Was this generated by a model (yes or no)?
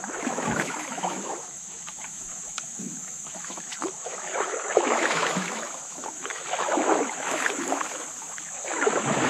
yes